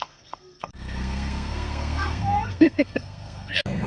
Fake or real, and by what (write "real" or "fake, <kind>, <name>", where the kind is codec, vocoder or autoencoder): fake, codec, SNAC